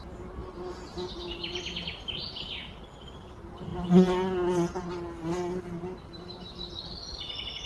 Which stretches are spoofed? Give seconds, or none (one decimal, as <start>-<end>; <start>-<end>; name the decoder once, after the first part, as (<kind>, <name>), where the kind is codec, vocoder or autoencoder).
none